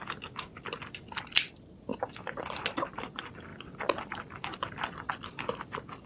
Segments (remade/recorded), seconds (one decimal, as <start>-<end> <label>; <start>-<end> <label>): 0.0-6.1 recorded